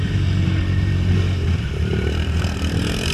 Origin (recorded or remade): remade